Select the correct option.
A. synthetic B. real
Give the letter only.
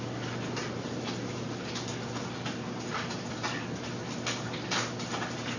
B